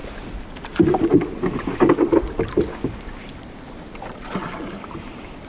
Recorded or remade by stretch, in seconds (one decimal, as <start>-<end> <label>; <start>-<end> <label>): 0.0-5.5 recorded